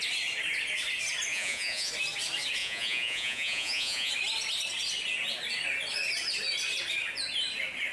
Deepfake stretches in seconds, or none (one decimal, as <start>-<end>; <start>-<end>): 1.3-1.9; 2.6-4.1